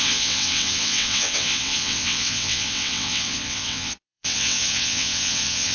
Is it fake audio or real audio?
fake